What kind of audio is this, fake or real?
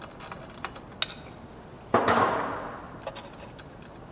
real